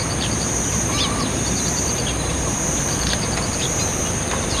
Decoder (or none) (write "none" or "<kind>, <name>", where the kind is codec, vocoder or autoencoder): vocoder, BigVGAN v2